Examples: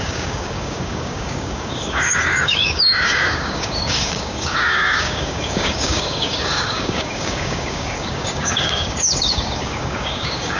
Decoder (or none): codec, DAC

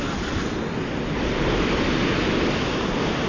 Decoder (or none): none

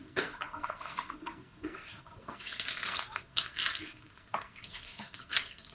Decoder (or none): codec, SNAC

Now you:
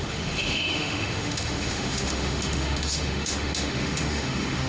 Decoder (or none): autoencoder, DAC-VAE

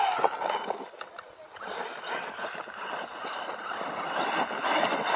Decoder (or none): none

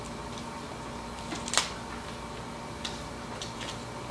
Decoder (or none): none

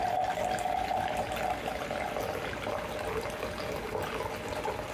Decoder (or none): none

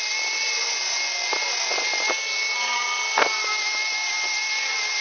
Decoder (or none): none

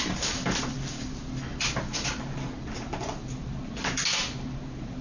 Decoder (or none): none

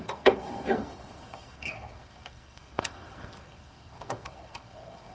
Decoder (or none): codec, SNAC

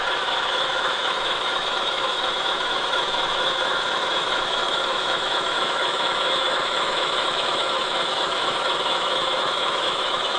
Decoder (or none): autoencoder, DAC-VAE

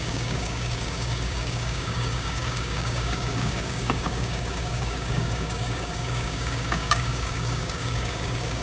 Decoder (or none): codec, DAC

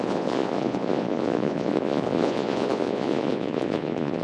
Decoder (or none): vocoder, Vocos